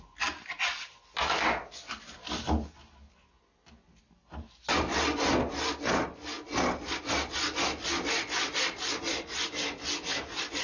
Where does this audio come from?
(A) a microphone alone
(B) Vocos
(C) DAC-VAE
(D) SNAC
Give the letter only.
A